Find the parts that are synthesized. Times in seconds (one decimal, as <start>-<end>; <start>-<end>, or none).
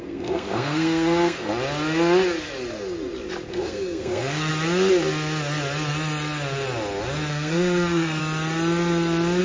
0.0-1.5; 3.5-4.5; 7.3-8.2